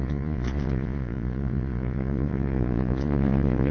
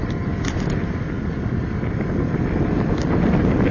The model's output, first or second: first